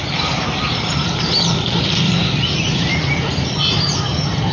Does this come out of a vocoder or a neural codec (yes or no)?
no